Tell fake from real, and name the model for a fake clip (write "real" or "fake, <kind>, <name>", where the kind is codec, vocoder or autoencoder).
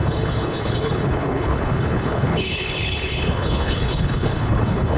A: fake, codec, HILCodec